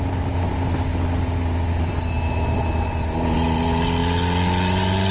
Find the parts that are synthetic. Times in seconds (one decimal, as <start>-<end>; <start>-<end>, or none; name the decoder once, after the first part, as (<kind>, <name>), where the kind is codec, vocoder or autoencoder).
none